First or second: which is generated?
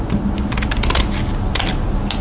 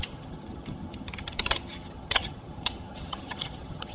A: second